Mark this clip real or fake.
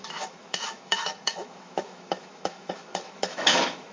fake